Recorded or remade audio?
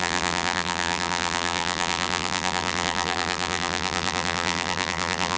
remade